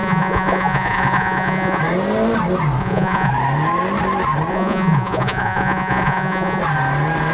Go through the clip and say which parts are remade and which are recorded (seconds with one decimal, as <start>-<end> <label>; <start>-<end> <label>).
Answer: 0.0-1.8 remade; 1.8-2.8 recorded; 2.8-3.3 remade; 3.3-4.5 recorded; 4.5-6.6 remade; 6.6-7.3 recorded